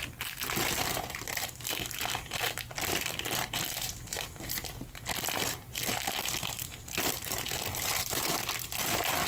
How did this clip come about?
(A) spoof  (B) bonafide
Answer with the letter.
B